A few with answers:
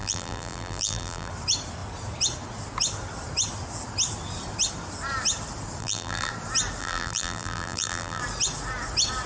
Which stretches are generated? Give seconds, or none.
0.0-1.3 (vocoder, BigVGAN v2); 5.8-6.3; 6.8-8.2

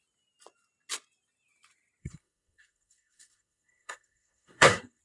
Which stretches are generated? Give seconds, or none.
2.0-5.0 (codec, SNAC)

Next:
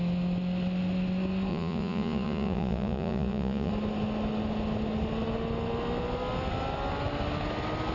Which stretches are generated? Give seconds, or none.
1.5-3.7 (vocoder, Vocos)

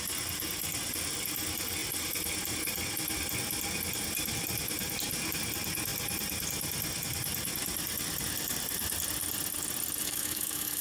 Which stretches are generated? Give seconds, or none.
10.0-10.8 (autoencoder, DAC-VAE)